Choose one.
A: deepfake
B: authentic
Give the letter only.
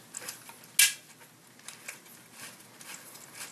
B